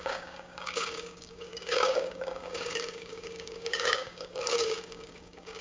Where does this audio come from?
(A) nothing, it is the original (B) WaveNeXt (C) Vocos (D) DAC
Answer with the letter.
D